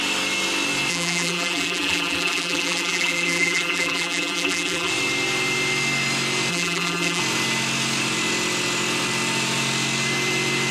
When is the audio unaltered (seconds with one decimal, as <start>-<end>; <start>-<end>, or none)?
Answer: 0.0-0.9; 4.9-6.5; 7.2-10.7